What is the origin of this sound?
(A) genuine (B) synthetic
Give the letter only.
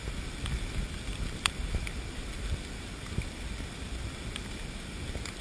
B